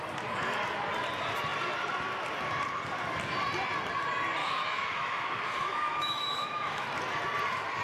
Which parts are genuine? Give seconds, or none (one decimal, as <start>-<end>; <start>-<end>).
0.0-4.4; 6.9-7.8